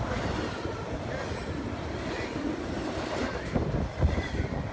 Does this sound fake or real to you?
real